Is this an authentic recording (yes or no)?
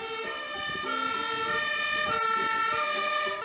yes